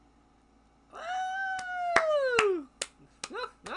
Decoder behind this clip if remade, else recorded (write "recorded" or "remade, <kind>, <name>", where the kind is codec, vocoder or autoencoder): recorded